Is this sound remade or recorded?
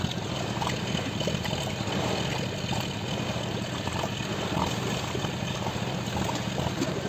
recorded